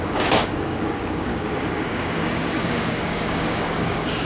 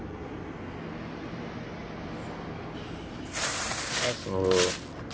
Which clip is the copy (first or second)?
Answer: first